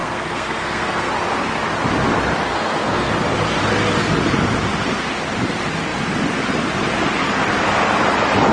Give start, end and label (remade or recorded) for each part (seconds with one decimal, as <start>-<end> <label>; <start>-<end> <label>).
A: 0.0-1.1 remade; 1.1-2.5 recorded; 2.5-3.1 remade; 3.1-8.5 recorded